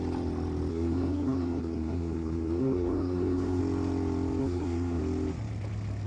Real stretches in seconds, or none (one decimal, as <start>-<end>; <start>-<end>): 0.0-0.7; 3.6-4.4; 5.0-6.1